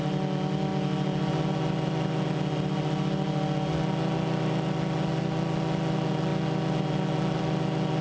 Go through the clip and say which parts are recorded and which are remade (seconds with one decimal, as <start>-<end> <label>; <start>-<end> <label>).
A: 0.0-8.0 recorded